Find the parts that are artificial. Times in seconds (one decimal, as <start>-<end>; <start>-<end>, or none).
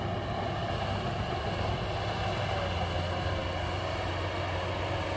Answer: none